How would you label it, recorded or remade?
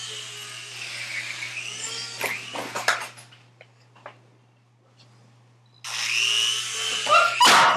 recorded